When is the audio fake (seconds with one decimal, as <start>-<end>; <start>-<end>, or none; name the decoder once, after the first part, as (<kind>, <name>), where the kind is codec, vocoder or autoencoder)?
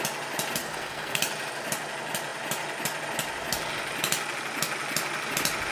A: 0.6-1.2 (codec, SNAC)